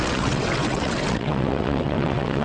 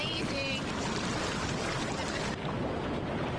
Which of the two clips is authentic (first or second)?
second